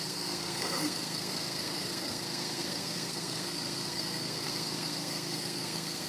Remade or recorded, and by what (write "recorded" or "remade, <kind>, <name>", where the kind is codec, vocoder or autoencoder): remade, codec, SNAC